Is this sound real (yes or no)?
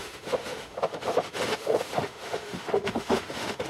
no